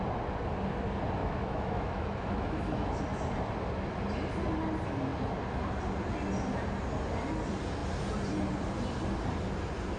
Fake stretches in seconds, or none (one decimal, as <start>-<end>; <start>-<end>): 1.2-3.0